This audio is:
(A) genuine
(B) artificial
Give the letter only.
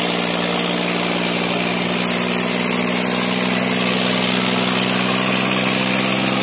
A